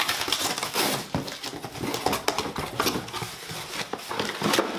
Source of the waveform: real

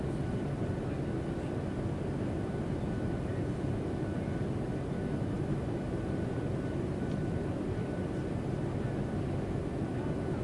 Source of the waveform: real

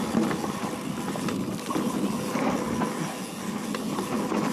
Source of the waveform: real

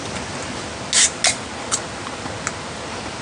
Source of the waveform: real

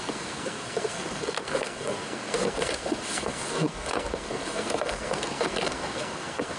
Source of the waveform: fake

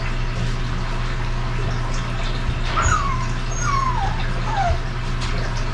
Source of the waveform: real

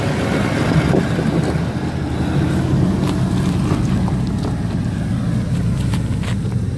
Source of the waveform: real